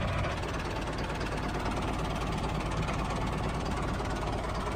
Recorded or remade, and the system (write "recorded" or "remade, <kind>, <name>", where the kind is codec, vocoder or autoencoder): recorded